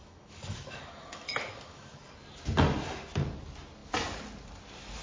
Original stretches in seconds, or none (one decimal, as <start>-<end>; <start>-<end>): 2.1-5.0